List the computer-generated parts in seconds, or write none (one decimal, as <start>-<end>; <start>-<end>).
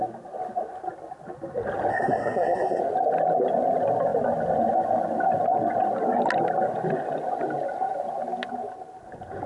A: 1.9-2.8